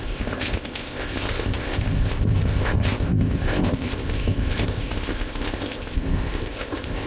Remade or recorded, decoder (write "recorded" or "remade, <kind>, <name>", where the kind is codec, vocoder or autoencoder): remade, codec, ZipCodec